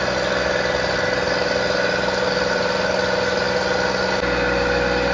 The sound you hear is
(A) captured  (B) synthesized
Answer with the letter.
A